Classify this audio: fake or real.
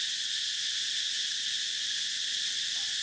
real